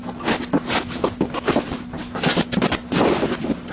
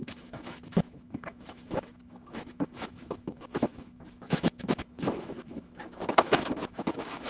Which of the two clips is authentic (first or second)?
first